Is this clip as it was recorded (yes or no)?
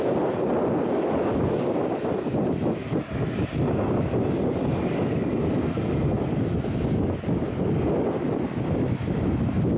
yes